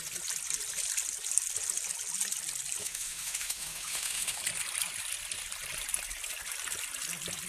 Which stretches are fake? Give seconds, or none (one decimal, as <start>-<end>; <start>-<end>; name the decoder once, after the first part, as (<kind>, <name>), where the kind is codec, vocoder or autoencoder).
2.8-4.4 (autoencoder, DAC-VAE)